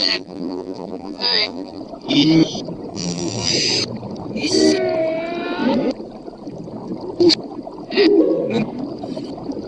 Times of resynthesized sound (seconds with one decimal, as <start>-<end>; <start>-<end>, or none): 0.0-1.8; 2.9-3.5